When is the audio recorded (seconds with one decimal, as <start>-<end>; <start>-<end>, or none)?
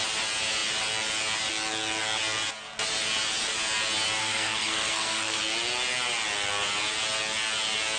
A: 0.0-4.2; 5.4-8.0